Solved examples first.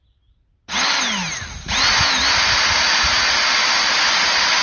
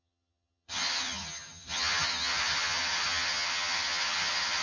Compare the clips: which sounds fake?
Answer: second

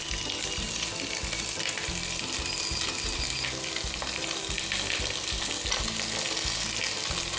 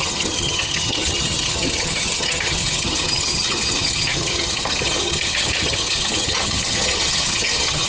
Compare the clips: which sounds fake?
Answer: second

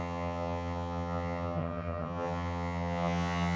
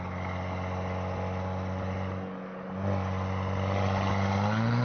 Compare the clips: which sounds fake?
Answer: first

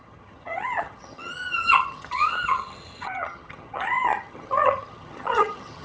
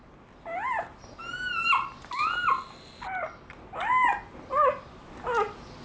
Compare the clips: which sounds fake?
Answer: first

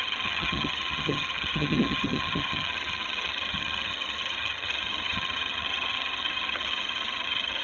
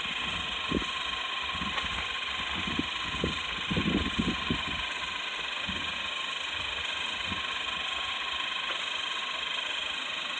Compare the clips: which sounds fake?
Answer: first